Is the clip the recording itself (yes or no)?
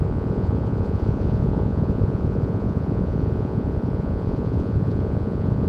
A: no